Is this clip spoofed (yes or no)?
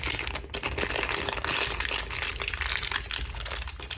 no